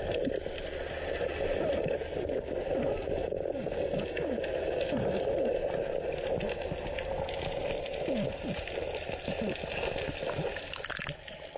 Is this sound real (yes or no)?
yes